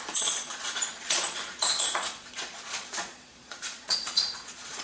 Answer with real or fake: fake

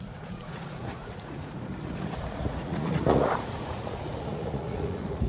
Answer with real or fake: fake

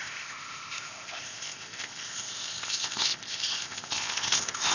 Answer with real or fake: fake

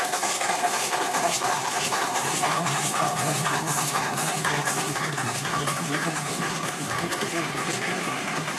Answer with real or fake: fake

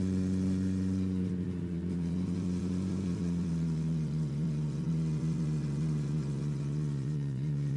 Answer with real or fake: fake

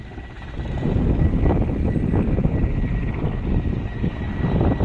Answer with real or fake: real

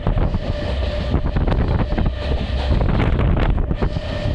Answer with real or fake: real